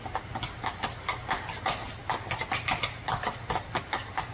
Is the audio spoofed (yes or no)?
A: no